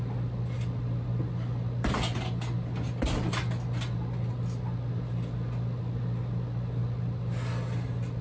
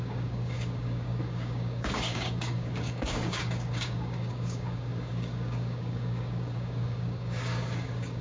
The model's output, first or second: second